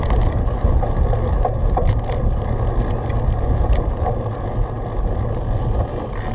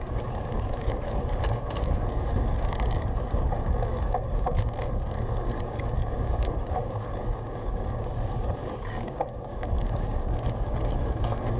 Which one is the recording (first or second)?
first